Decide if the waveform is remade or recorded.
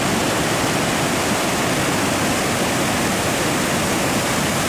recorded